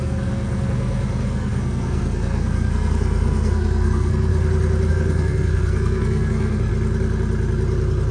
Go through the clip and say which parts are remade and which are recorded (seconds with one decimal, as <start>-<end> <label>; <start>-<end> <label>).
0.0-4.3 remade; 4.3-4.9 recorded; 4.9-6.7 remade; 6.7-8.1 recorded